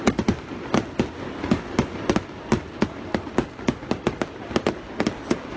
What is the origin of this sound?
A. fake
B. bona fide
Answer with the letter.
B